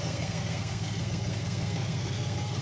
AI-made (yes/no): yes